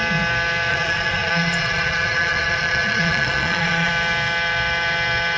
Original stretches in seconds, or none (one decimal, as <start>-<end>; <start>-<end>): 0.0-0.7; 3.9-5.4